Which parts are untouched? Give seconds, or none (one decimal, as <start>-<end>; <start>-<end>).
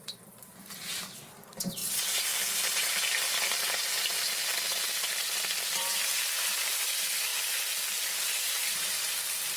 1.8-3.3; 7.3-8.1